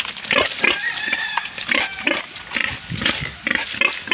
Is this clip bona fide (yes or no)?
yes